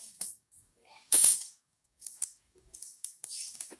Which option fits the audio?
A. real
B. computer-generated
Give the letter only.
B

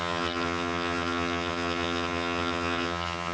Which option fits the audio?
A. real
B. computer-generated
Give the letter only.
B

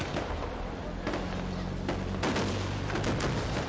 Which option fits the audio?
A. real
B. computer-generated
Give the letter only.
A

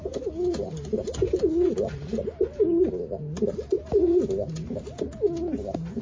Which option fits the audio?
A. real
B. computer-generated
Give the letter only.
A